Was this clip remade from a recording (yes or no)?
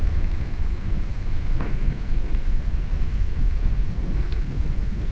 yes